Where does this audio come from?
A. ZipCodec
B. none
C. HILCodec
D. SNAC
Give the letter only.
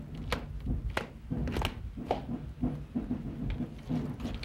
B